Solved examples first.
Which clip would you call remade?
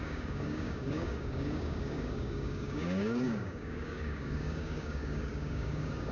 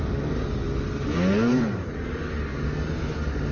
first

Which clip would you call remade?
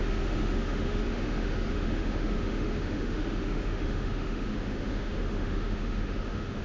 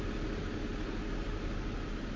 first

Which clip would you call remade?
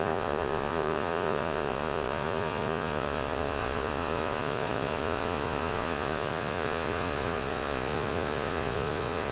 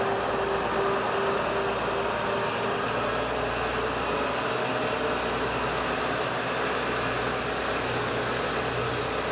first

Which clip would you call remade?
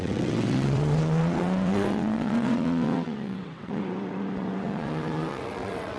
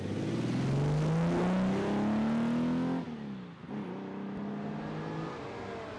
first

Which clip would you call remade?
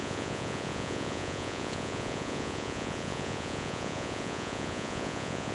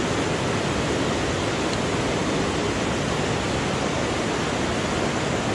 first